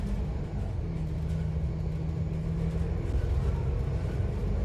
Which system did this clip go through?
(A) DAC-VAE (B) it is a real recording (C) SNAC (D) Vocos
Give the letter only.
B